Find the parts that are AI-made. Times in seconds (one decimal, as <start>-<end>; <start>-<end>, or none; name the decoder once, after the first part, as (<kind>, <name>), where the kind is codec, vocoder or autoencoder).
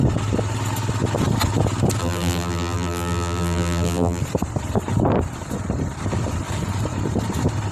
2.0-4.2 (vocoder, BigVGAN v2)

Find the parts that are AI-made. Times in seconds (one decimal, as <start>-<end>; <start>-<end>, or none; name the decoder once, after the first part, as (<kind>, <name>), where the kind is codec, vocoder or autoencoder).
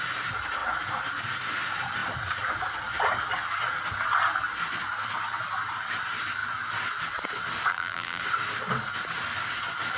7.7-8.2 (vocoder, BigVGAN v2)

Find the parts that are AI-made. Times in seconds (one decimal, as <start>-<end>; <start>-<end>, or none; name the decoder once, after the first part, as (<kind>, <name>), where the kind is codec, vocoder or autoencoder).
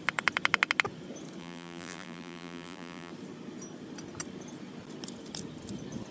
1.4-3.1 (vocoder, BigVGAN v2)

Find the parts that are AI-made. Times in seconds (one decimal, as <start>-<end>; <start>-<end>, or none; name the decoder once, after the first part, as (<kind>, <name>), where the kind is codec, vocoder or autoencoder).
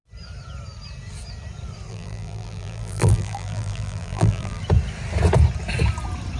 1.9-4.6 (vocoder, BigVGAN v2)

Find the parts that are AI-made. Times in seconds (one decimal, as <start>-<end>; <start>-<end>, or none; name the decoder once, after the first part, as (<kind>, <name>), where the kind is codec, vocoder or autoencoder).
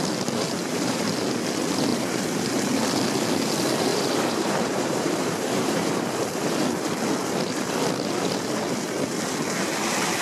0.6-1.1 (vocoder, BigVGAN v2); 1.9-2.7; 3.9-6.1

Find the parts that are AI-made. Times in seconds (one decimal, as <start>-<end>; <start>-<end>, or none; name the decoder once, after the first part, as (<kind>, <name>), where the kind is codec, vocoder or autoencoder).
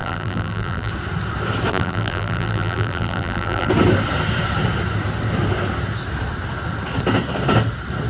0.0-0.9 (vocoder, BigVGAN v2); 1.7-3.7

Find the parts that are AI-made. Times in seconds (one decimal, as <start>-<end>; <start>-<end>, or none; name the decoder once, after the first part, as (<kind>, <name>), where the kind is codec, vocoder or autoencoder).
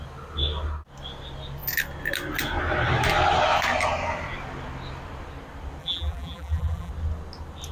5.8-6.9 (vocoder, BigVGAN v2)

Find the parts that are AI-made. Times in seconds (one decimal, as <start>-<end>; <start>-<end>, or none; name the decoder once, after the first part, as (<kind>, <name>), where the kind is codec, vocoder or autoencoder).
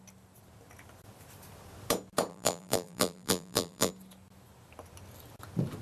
2.3-3.9 (vocoder, BigVGAN v2)